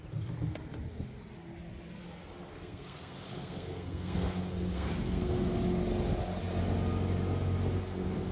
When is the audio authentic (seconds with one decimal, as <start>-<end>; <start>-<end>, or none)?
0.0-2.5; 5.3-8.3

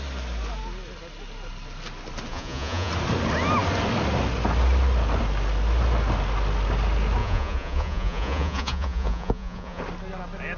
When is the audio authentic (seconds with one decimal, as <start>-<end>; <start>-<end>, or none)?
0.0-2.3; 2.9-7.2; 9.8-10.6